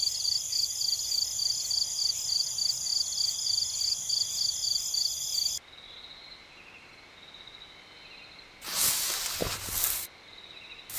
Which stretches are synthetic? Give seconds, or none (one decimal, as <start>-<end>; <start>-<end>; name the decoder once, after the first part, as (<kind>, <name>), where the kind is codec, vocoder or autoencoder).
none